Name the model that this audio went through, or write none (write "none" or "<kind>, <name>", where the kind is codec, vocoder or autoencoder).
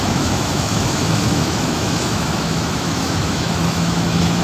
autoencoder, DAC-VAE